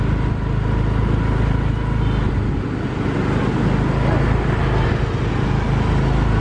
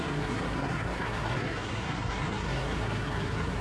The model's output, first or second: second